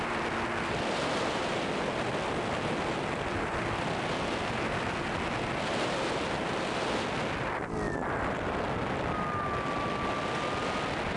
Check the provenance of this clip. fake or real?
real